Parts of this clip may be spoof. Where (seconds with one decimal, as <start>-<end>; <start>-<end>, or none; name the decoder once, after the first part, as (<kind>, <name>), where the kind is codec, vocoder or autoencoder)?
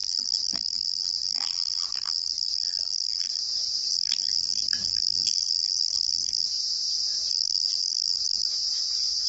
0.0-3.4 (vocoder, BigVGAN v2); 3.9-6.5; 7.3-8.5